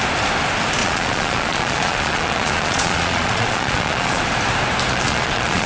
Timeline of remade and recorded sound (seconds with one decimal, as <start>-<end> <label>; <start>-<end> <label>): 0.0-0.8 recorded; 0.8-4.2 remade; 4.2-4.9 recorded; 4.9-5.7 remade